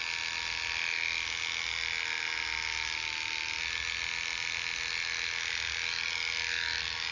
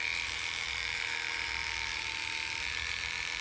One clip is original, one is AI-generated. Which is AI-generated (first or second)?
second